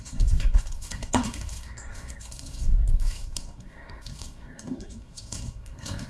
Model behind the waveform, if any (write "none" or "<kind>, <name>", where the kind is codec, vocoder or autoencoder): codec, SNAC